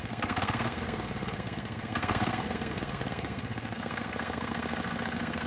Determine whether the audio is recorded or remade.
remade